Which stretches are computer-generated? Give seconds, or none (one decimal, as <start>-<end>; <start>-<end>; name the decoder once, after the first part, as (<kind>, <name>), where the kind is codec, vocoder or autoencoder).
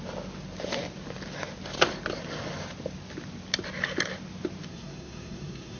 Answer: 4.7-5.8 (codec, SNAC)